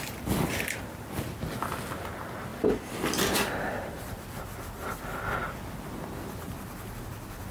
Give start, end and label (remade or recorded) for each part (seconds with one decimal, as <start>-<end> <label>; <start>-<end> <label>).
0.0-7.5 recorded